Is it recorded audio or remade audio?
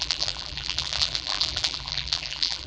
remade